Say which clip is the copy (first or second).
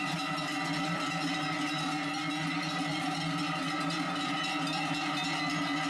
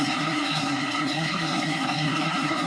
second